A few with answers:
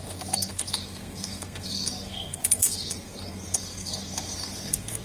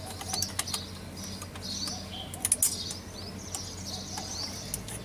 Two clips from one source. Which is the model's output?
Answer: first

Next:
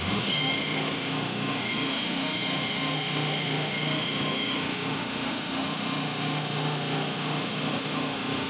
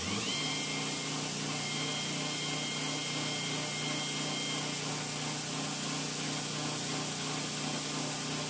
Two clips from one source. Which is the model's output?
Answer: first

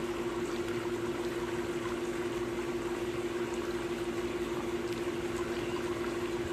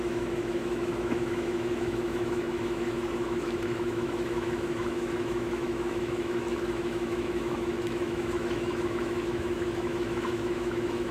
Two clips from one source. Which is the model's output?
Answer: second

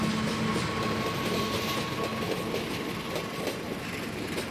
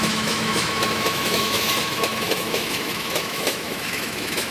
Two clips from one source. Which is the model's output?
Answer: second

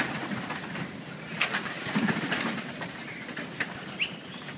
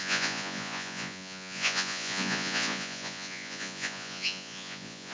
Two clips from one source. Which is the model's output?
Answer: second